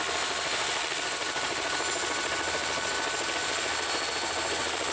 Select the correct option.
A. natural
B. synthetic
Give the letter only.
A